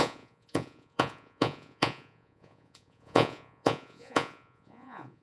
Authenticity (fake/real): fake